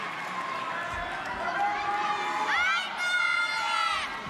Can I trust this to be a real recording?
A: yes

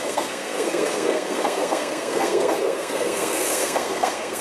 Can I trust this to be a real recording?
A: no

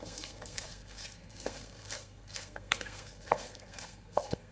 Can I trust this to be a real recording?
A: no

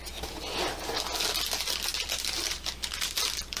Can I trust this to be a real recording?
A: yes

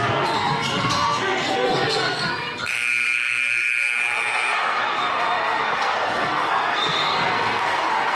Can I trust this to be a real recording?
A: no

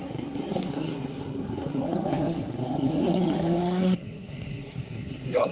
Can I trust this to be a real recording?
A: no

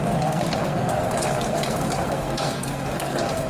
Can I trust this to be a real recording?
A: no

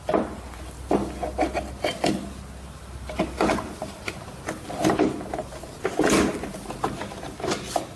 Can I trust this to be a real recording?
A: yes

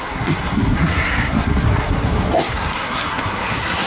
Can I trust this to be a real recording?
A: no